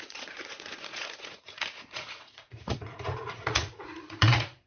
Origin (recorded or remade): remade